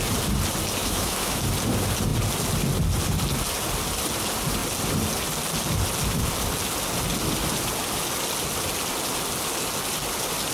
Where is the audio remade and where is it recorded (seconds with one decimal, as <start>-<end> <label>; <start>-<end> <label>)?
0.0-0.8 recorded; 0.8-1.4 remade; 1.4-10.5 recorded